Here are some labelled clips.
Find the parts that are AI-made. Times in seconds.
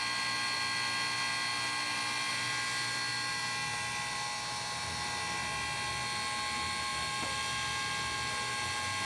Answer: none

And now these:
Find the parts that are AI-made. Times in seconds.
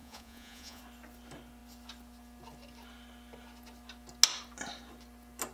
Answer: 0.0-0.8 (vocoder, Vocos)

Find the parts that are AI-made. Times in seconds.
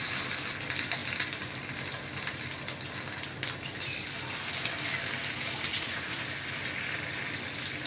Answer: 5.7-6.2 (vocoder, Vocos)